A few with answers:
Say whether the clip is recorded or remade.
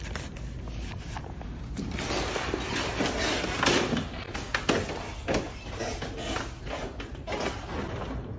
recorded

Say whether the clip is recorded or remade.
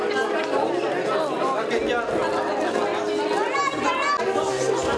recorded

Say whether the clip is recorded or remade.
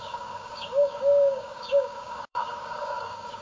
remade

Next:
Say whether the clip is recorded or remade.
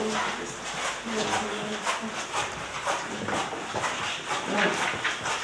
recorded